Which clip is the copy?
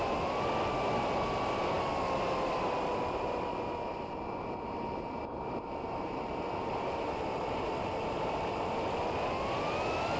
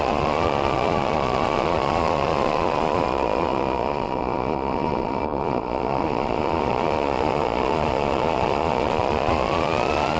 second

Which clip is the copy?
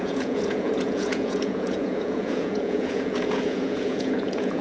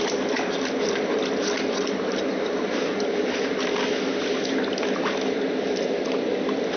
first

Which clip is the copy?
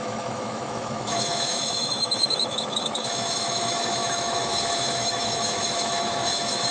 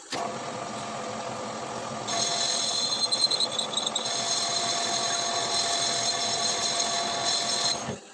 first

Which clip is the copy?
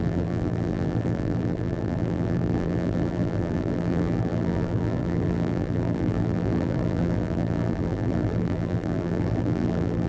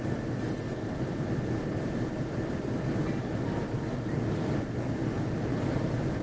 first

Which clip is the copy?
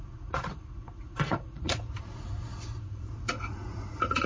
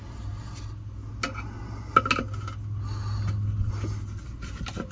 first